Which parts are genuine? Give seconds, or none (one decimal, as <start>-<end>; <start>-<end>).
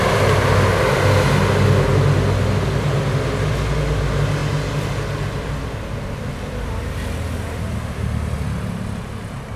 0.0-9.6